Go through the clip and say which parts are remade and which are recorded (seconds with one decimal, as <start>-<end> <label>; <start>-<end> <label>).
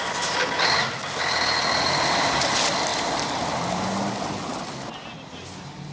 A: 0.0-5.9 recorded